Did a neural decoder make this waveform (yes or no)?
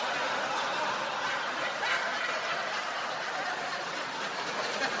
no